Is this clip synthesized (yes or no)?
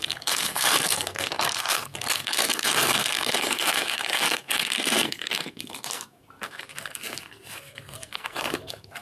yes